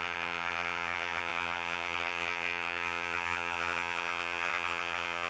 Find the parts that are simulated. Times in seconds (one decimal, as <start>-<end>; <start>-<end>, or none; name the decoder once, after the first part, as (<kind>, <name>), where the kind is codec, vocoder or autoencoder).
0.0-5.3 (vocoder, HiFi-GAN)